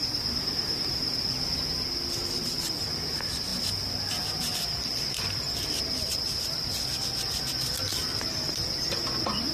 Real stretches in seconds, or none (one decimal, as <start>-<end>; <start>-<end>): 0.0-9.5